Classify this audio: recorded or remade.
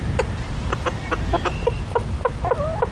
recorded